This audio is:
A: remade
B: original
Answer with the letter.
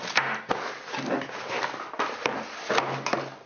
B